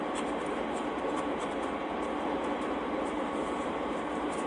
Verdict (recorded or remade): remade